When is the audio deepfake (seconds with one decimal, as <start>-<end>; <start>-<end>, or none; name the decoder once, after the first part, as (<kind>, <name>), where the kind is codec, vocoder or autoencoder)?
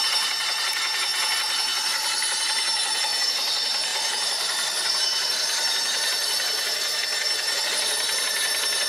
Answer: 0.0-8.9 (vocoder, BigVGAN v2)